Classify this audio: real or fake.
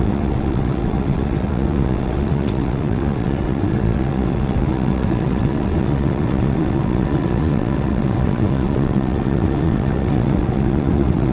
fake